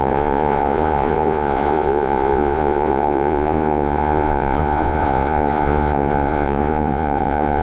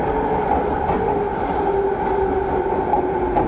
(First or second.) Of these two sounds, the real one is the second